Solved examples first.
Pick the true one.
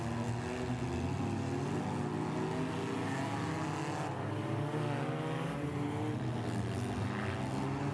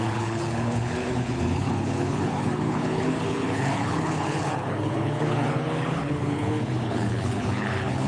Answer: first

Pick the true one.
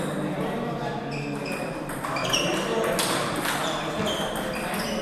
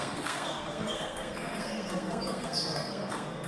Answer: first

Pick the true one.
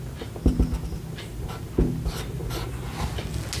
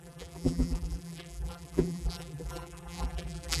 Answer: first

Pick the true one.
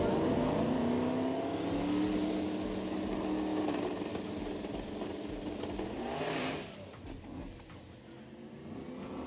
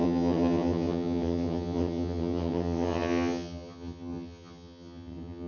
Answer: first